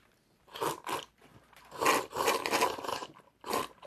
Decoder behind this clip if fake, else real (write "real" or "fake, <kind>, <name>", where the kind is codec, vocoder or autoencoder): real